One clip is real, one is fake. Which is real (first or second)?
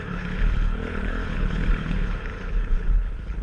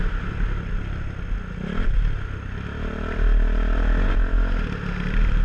second